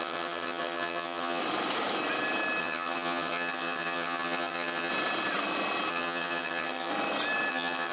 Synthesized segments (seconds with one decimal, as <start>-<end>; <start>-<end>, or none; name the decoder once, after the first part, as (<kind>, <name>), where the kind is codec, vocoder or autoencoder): 0.0-1.4 (vocoder, HiFi-GAN); 2.6-4.9; 5.9-6.9; 7.5-7.9